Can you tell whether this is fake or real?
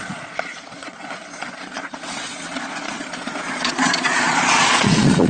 fake